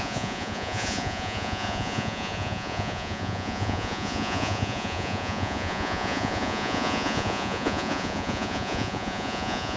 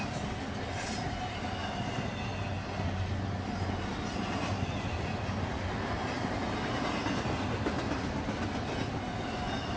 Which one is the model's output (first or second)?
first